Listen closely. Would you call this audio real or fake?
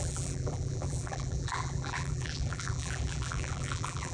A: fake